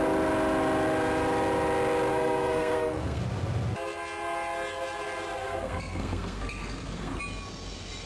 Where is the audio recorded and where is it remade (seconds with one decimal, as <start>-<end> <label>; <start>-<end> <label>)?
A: 0.0-2.1 recorded; 2.1-3.2 remade; 3.2-5.4 recorded; 5.4-7.2 remade; 7.2-8.1 recorded